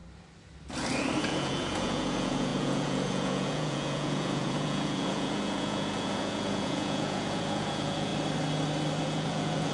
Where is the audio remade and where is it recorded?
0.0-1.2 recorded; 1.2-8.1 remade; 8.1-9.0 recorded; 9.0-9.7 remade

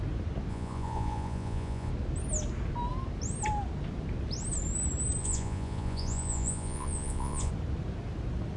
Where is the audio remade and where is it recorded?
0.0-0.5 recorded; 0.5-1.9 remade; 1.9-5.2 recorded; 5.2-7.5 remade; 7.5-8.6 recorded